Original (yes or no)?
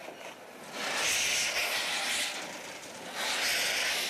yes